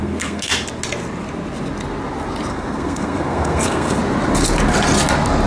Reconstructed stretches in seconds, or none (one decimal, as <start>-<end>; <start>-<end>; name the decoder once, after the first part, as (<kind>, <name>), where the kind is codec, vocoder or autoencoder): 0.0-0.5 (codec, SNAC); 2.5-4.0